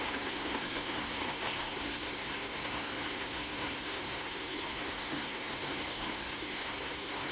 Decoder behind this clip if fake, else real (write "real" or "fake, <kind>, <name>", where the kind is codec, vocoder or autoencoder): fake, codec, SNAC